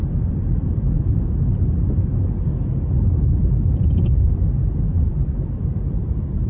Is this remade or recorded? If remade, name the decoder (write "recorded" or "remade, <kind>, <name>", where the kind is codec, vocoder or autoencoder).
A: remade, vocoder, BigVGAN v2